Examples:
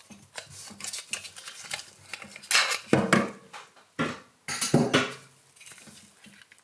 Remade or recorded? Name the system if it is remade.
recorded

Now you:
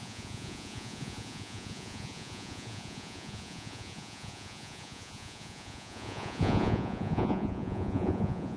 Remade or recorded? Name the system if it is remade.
remade, vocoder, Vocos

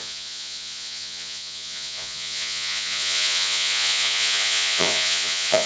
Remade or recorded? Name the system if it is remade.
remade, vocoder, Vocos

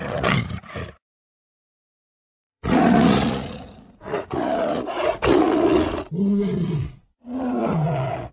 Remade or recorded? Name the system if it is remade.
remade, vocoder, Vocos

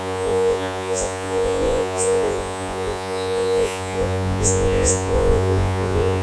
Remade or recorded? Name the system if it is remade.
remade, vocoder, Vocos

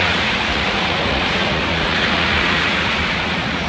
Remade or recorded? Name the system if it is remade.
remade, vocoder, Vocos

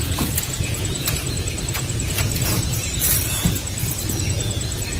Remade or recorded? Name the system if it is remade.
remade, vocoder, Vocos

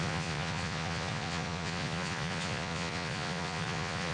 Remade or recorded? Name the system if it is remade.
remade, vocoder, Vocos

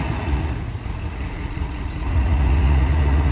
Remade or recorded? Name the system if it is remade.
remade, vocoder, Vocos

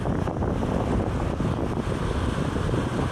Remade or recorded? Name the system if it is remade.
recorded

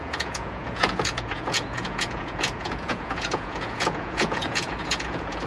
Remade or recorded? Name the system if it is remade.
remade, vocoder, Vocos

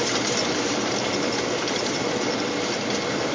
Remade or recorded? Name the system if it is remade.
recorded